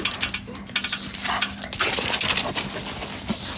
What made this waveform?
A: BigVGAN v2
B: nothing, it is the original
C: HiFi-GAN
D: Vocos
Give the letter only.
B